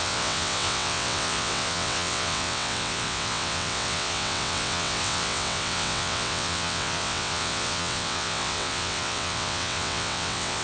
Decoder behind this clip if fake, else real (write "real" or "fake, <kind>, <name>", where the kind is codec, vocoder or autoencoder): fake, vocoder, WaveNeXt